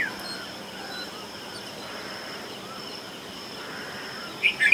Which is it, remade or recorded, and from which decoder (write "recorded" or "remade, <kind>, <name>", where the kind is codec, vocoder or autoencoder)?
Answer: recorded